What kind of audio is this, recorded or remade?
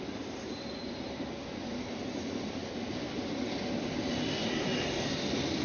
recorded